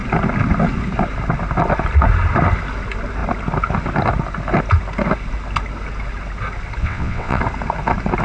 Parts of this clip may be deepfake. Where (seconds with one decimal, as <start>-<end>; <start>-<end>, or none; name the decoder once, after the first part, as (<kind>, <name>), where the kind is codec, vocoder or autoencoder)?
6.8-7.4 (vocoder, WaveNeXt)